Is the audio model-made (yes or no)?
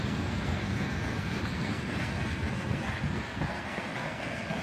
yes